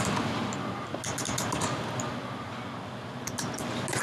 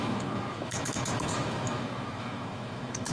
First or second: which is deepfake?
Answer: second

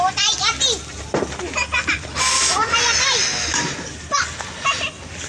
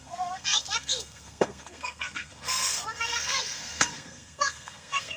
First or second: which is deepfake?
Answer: second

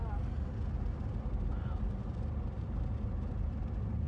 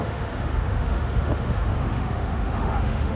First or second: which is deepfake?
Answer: second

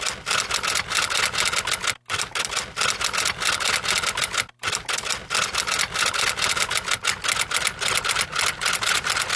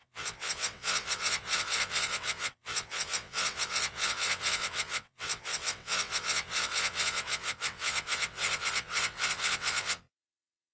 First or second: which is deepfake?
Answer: second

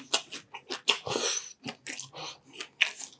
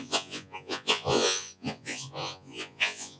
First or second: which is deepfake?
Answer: second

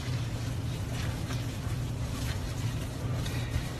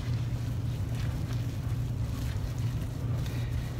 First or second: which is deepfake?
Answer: first